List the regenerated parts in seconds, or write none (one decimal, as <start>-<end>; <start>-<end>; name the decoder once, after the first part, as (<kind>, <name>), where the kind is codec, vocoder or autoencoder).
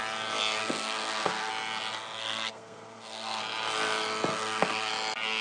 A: 0.6-1.5 (codec, SNAC); 2.2-3.4; 4.3-4.9